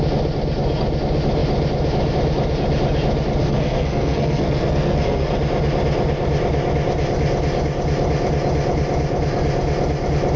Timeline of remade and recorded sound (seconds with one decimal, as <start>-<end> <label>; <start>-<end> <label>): 0.0-3.4 recorded; 3.4-5.3 remade; 5.3-10.4 recorded

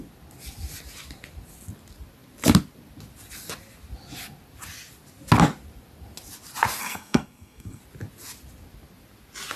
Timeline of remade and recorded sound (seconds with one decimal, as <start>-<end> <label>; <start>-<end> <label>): 0.0-6.8 recorded; 6.8-7.8 remade; 7.8-9.6 recorded